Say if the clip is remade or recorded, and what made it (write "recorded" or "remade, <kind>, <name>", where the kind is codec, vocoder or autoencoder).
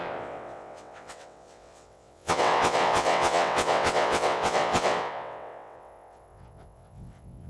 remade, vocoder, WaveNeXt